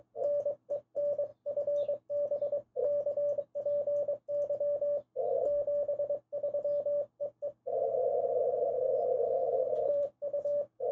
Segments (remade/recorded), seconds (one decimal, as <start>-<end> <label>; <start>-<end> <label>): 0.0-8.4 recorded; 8.4-10.9 remade

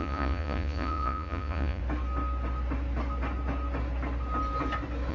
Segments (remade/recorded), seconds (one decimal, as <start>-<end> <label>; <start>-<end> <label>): 0.0-1.8 remade; 1.8-5.1 recorded